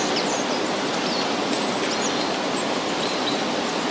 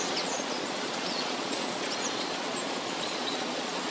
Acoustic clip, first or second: first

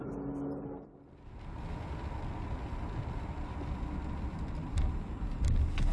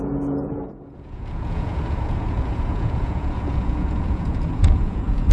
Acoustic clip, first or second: first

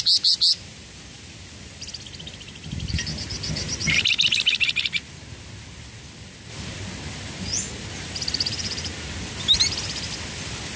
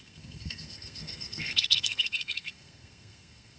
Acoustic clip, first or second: first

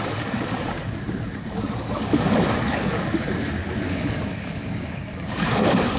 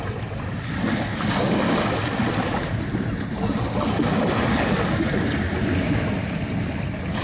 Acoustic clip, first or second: second